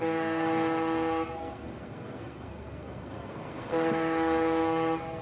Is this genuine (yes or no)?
no